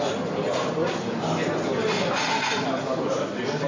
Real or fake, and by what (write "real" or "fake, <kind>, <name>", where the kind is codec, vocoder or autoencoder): real